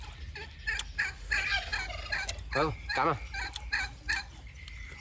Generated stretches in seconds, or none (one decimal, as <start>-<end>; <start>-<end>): none